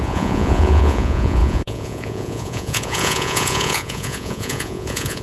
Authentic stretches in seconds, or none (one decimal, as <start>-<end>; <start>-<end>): none